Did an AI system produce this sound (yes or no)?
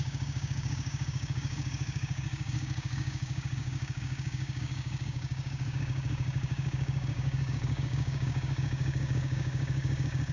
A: yes